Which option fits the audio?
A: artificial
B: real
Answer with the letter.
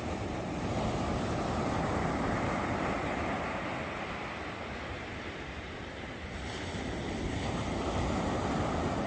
B